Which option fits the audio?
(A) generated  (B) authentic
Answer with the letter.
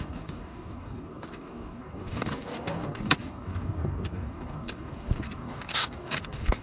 A